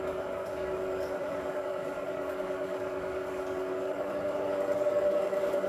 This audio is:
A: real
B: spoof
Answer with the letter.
B